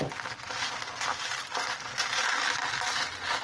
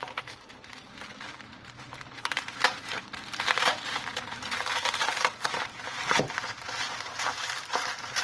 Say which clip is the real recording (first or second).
first